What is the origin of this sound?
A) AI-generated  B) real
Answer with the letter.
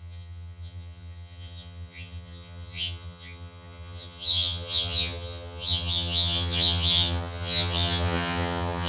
A